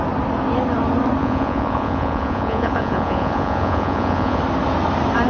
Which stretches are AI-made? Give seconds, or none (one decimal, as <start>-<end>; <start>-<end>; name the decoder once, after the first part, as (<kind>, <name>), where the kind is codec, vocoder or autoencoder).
1.2-4.4 (vocoder, Vocos)